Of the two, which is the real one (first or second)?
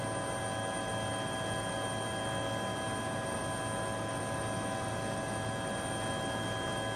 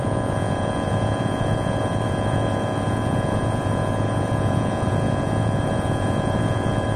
first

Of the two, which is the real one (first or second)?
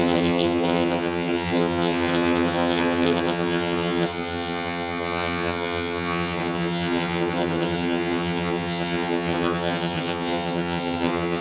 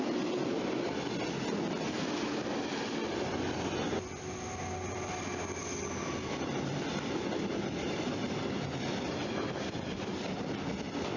second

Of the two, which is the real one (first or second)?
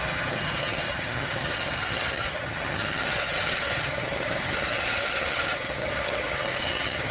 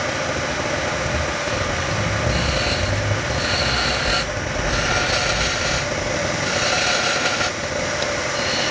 second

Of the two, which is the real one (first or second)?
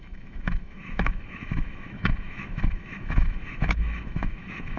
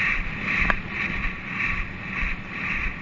second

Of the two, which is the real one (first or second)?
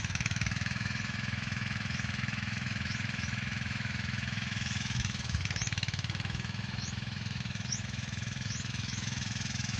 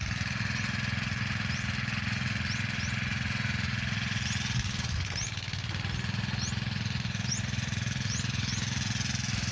second